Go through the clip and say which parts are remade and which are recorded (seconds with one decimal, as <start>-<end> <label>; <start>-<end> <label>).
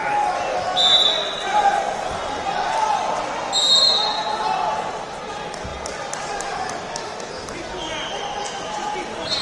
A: 0.0-9.4 recorded